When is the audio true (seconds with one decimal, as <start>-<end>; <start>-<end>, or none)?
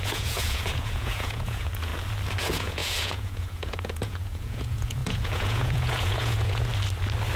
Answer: 1.9-2.4; 6.7-7.4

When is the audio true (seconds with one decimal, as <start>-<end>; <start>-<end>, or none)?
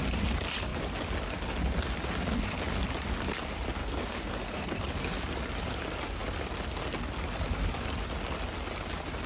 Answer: 0.0-3.8; 4.8-9.3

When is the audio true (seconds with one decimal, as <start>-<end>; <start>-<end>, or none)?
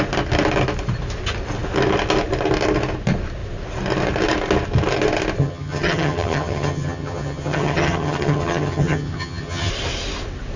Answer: 0.0-5.4; 9.7-10.6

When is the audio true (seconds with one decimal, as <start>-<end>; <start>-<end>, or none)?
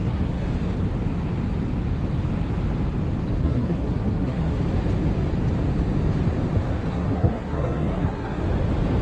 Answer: 0.5-3.4; 4.6-6.9; 8.4-9.0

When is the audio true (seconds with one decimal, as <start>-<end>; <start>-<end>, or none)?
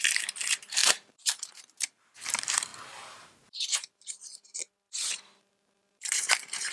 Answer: 2.7-3.3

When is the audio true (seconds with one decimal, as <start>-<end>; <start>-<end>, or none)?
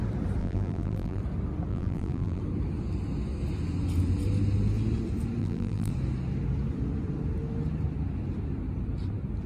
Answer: 0.0-0.4; 1.2-1.7; 2.4-5.4; 5.9-9.5